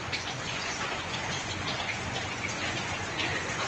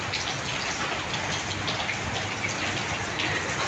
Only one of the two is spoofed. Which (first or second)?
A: first